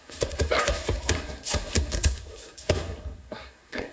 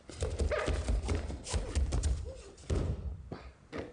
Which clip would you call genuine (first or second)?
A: second